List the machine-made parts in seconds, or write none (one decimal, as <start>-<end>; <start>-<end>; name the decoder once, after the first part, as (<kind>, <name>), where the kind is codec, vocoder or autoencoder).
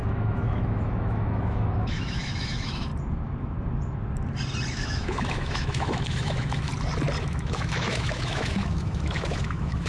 0.0-2.9 (autoencoder, DAC-VAE); 4.7-6.7; 7.2-9.9